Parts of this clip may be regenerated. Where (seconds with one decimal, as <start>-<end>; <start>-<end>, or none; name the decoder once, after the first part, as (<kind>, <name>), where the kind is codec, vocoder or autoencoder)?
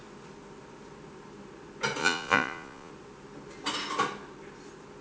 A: 2.0-2.9 (vocoder, Vocos)